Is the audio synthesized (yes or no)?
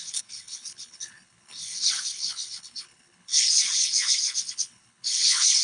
yes